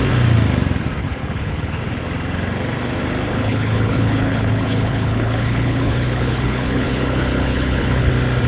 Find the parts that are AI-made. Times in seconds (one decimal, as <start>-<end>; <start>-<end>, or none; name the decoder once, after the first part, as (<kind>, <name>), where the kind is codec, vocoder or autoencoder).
1.0-1.8 (codec, HILCodec); 3.3-8.1